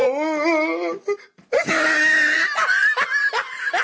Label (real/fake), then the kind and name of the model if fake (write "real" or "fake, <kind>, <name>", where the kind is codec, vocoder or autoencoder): real